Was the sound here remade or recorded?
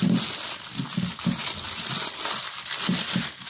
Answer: recorded